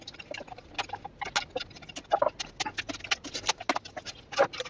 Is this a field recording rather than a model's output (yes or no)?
yes